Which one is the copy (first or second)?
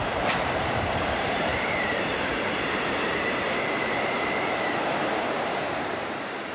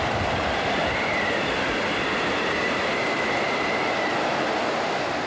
first